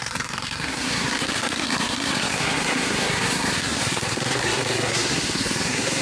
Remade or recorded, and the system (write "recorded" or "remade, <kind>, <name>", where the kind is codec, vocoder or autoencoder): remade, codec, SNAC